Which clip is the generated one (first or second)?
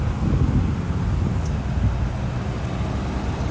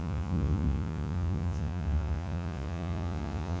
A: second